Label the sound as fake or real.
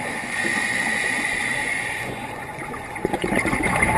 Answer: fake